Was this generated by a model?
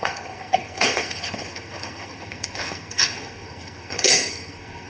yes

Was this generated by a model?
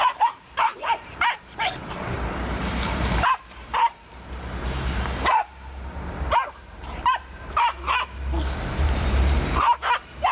yes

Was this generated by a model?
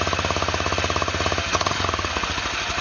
no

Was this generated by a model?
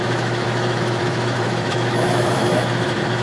yes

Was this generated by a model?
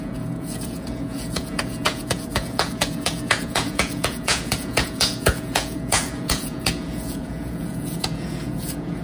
yes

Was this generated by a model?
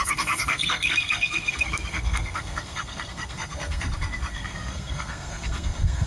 yes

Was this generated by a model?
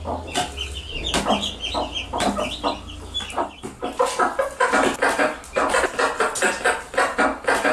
no